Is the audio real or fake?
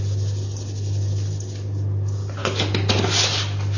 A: real